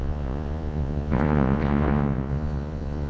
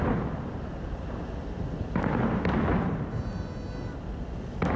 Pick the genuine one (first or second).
second